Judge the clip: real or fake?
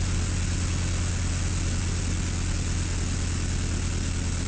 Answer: real